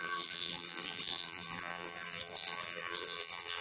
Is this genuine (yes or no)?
no